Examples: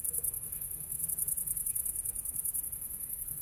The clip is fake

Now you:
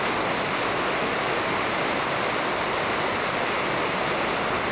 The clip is real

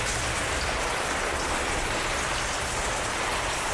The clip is real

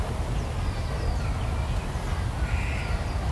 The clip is real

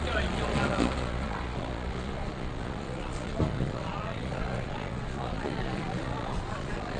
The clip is fake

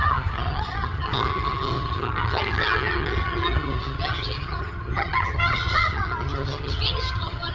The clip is fake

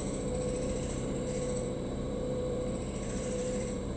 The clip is fake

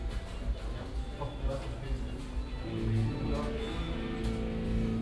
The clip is real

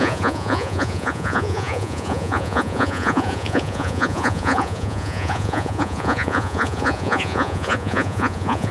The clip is fake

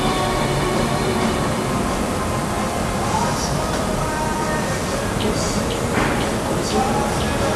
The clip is fake